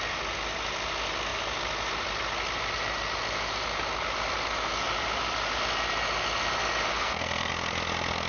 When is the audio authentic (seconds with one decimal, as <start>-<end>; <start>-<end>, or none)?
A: 0.0-6.9; 7.5-8.3